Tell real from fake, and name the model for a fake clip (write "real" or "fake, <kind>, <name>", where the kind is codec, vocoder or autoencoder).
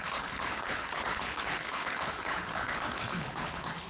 fake, codec, HILCodec